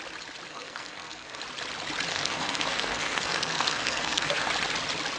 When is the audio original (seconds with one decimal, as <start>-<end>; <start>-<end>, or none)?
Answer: 0.0-0.5; 1.4-2.1; 4.5-5.2

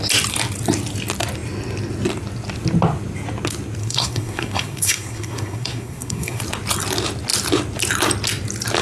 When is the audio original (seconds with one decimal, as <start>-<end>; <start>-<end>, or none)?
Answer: 0.0-3.8; 6.4-8.8

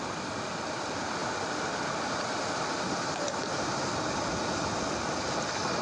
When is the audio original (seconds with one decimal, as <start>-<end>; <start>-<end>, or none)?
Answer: 0.0-5.8

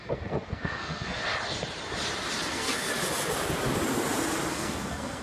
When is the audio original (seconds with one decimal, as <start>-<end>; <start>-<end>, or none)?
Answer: 1.2-2.5; 2.9-4.5

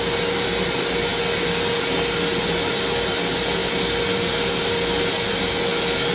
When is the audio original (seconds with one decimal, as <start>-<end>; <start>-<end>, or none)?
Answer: 0.0-6.1

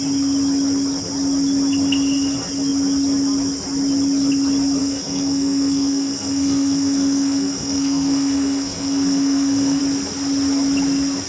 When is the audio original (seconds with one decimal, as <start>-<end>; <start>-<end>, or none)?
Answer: 0.0-4.8; 9.8-11.3

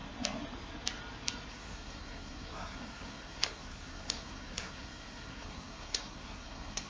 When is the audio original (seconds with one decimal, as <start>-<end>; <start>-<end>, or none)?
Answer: 0.0-1.5

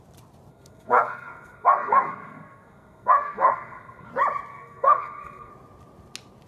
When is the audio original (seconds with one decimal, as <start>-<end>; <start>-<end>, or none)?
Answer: 0.0-0.5; 4.1-4.5; 5.5-6.5